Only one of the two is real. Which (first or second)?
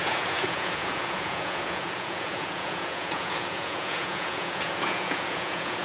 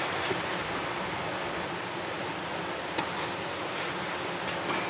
second